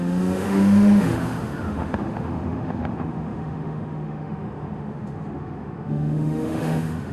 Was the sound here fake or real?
fake